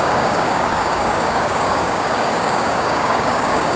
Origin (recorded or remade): remade